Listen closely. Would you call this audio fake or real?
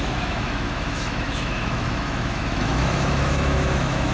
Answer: fake